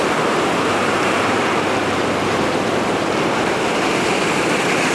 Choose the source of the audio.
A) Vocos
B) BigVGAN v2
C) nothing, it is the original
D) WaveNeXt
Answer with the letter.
B